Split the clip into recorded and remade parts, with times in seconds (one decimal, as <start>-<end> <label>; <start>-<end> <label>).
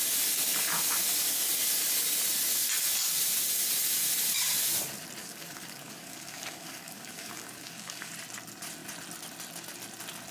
0.0-5.2 recorded; 5.2-8.1 remade; 8.1-10.3 recorded